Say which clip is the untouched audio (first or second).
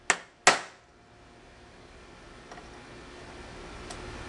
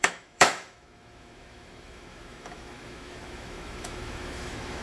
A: first